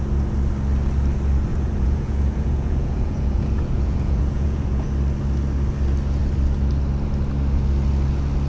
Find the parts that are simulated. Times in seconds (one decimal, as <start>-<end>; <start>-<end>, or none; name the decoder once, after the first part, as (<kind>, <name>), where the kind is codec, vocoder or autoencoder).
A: 1.5-4.9 (vocoder, Vocos)